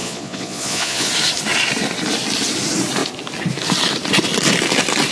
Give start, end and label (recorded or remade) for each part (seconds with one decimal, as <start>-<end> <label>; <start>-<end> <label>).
0.0-1.1 remade; 1.1-5.1 recorded